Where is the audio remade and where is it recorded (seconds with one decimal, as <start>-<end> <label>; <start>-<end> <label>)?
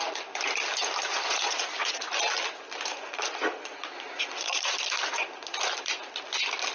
0.0-1.1 recorded; 1.1-2.1 remade; 2.1-2.9 recorded; 2.9-4.7 remade; 4.7-6.7 recorded